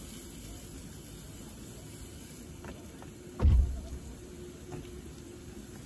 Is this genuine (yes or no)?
yes